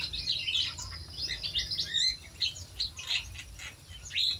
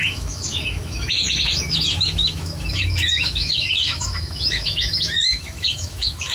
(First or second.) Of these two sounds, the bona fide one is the first